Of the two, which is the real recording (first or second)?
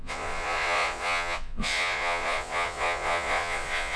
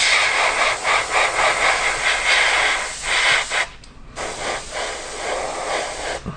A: second